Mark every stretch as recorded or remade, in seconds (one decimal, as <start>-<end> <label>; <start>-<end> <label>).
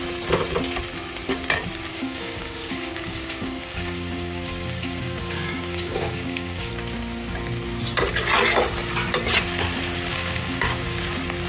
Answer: 0.0-1.9 recorded; 1.9-6.7 remade; 6.7-10.1 recorded; 10.1-11.0 remade; 11.0-11.5 recorded